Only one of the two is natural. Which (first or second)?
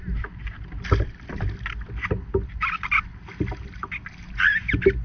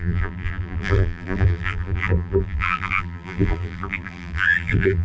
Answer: first